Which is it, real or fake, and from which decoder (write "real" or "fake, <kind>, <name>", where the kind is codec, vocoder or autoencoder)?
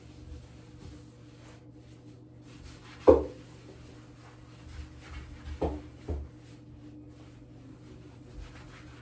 real